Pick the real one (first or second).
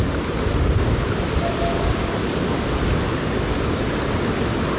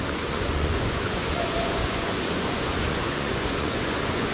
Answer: first